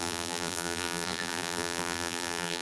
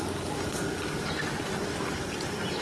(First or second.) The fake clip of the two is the first